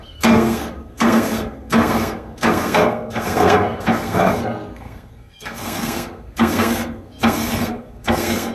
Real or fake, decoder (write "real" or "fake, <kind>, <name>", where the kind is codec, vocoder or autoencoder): fake, codec, SNAC